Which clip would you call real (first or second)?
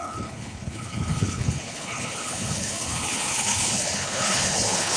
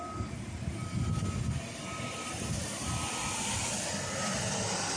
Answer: second